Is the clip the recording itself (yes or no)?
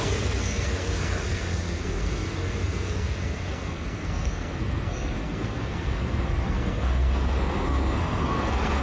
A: no